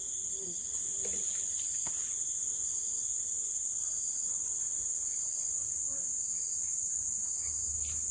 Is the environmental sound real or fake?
real